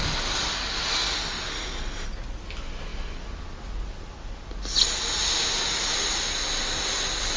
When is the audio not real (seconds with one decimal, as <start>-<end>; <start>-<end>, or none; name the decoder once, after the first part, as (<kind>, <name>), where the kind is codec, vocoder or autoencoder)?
none